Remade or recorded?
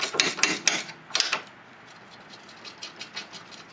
recorded